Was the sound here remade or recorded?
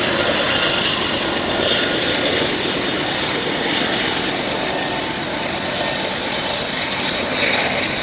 recorded